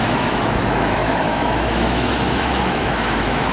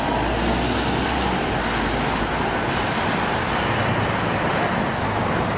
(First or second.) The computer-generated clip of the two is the first